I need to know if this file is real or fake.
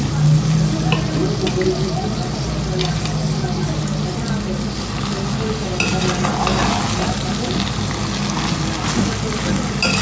real